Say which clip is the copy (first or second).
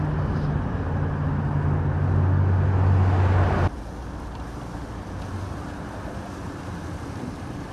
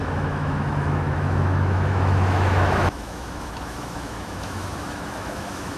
second